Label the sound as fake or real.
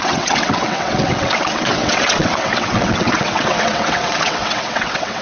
fake